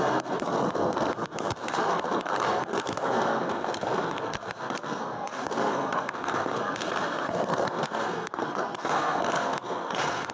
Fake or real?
fake